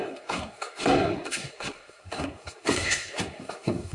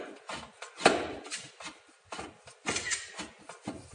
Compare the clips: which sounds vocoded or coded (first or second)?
first